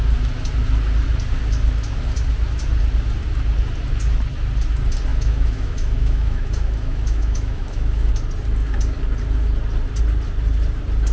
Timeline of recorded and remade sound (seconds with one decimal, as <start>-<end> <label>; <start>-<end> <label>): 0.0-5.1 recorded; 5.1-8.1 remade; 8.1-11.1 recorded

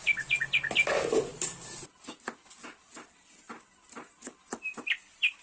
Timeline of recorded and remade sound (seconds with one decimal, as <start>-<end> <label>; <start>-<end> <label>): 0.0-5.4 recorded

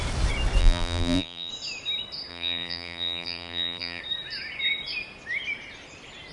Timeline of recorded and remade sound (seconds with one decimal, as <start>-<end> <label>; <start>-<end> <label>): 0.0-0.6 recorded; 0.6-1.5 remade; 1.5-2.3 recorded; 2.3-4.0 remade; 4.0-6.3 recorded

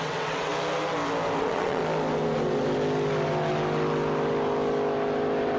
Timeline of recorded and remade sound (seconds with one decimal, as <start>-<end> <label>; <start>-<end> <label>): 0.0-0.5 remade; 0.5-1.4 recorded; 1.4-1.8 remade; 1.8-5.6 recorded

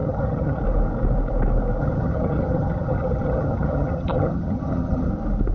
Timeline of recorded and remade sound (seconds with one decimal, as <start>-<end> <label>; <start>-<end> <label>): 0.0-0.6 remade; 0.6-1.8 recorded; 1.8-5.1 remade; 5.1-5.5 recorded